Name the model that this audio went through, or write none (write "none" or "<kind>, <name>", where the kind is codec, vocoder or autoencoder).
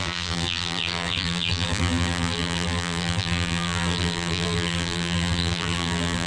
vocoder, BigVGAN v2